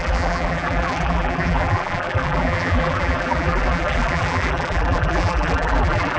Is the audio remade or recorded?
remade